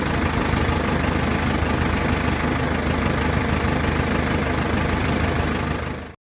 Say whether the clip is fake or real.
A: real